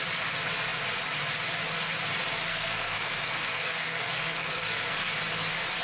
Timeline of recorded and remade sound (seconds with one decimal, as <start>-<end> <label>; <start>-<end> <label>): 0.0-2.5 recorded; 2.5-5.1 remade; 5.1-5.8 recorded